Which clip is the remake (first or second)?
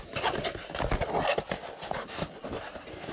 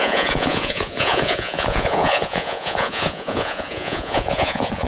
second